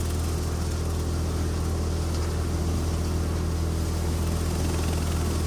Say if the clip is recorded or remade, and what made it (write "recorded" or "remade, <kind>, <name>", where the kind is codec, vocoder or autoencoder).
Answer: recorded